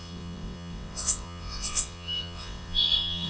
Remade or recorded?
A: remade